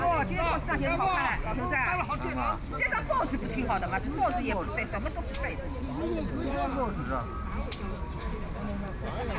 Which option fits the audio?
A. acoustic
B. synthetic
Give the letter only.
A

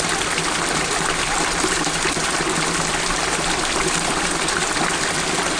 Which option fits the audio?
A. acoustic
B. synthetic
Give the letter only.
A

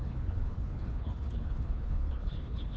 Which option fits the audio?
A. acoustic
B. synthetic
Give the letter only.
B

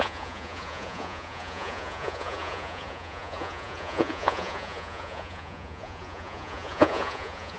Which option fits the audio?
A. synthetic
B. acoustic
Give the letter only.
A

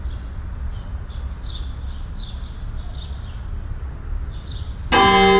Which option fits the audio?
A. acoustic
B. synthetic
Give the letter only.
A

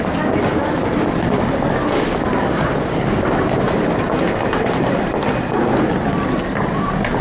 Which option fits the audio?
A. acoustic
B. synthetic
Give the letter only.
A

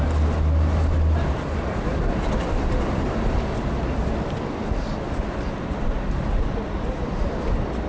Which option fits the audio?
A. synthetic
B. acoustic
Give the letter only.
B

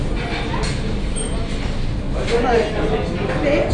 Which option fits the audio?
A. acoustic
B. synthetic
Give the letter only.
A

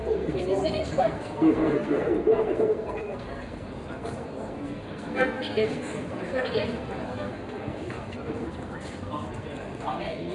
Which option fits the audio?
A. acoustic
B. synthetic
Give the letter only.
B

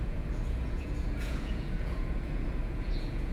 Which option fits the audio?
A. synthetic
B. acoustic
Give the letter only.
A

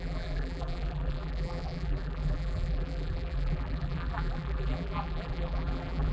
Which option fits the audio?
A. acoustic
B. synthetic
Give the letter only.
B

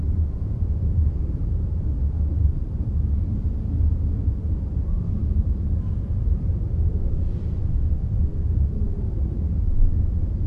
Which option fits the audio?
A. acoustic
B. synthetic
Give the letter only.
B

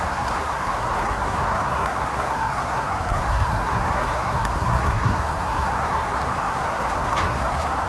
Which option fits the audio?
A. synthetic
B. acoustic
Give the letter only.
A